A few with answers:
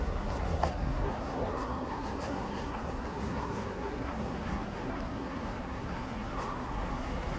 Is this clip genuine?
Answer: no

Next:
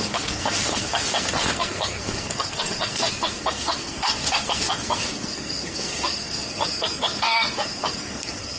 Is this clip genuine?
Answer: no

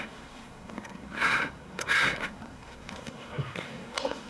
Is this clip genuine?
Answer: no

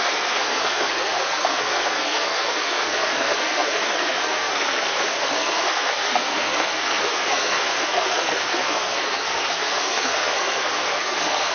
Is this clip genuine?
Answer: no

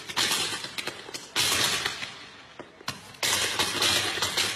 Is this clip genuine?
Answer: yes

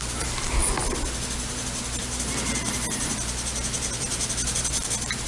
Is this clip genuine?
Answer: yes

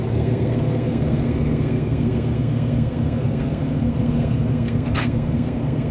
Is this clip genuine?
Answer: no